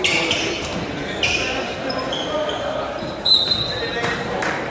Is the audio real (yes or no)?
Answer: no